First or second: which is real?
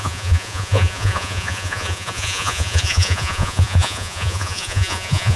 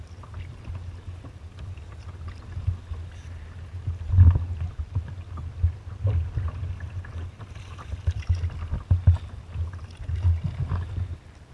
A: second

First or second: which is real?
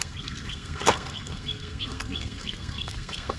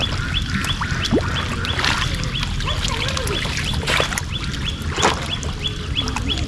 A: second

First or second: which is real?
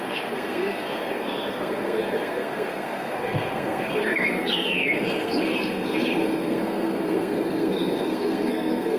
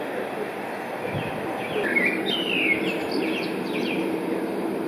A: second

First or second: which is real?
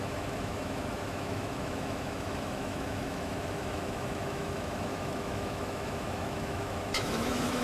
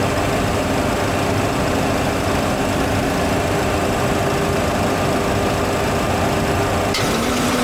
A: second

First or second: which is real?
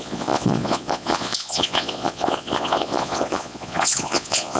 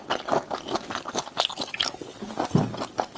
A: second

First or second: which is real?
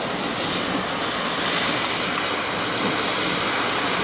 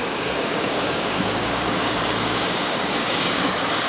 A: first